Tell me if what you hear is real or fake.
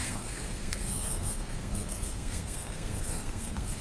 fake